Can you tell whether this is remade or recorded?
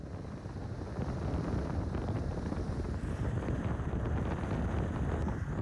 recorded